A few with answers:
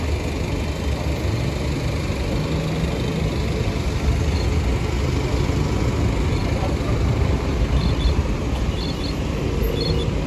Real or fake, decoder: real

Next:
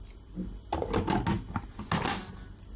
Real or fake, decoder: real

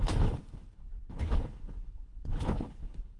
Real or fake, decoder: fake, codec, HILCodec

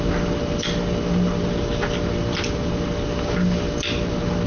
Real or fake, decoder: real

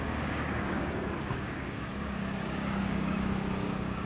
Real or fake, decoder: fake, codec, DAC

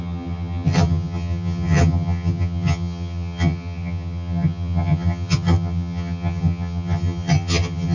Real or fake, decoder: fake, vocoder, HiFi-GAN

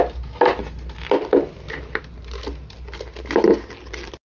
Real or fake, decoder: real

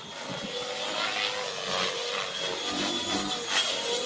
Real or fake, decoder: real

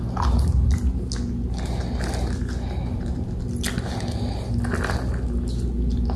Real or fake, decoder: real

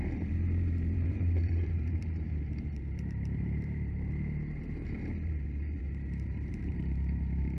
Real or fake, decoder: fake, vocoder, BigVGAN v2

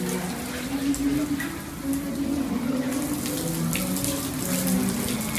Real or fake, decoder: real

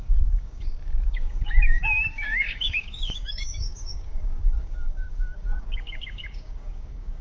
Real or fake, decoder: fake, codec, DAC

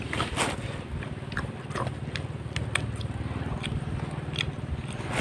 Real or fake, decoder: real